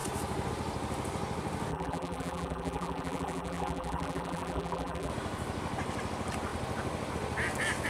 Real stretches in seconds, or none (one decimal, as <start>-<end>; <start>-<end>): 0.0-1.7; 5.1-7.9